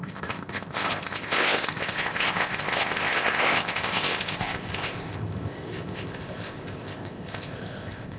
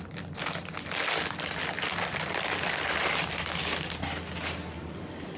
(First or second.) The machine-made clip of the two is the first